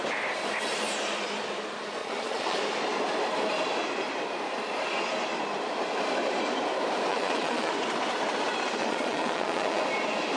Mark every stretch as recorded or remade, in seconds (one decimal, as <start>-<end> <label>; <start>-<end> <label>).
0.0-2.0 recorded; 2.0-2.6 remade; 2.6-7.1 recorded; 7.1-7.7 remade; 7.7-8.8 recorded; 8.8-9.8 remade; 9.8-10.4 recorded